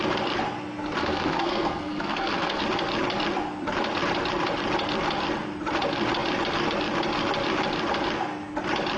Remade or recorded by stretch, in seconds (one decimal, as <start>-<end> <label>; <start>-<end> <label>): 0.0-1.0 recorded; 1.0-2.6 remade; 2.6-9.0 recorded